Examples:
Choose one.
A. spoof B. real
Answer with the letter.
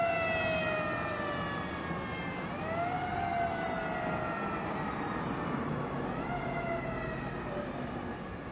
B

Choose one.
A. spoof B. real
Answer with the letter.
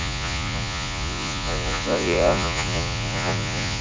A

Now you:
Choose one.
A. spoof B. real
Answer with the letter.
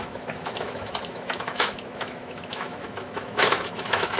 A